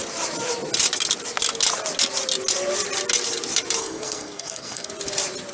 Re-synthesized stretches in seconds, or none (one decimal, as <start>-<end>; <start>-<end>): 3.8-4.9